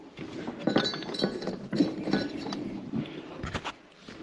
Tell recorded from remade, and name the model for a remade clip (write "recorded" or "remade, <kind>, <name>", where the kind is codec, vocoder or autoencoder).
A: remade, vocoder, BigVGAN v2